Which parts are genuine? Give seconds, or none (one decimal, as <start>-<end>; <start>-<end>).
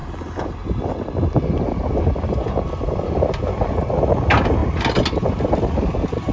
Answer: 0.0-6.3